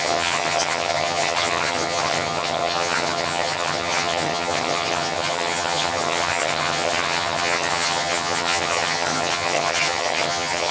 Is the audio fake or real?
fake